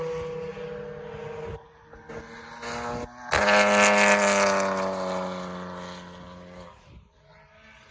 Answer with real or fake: real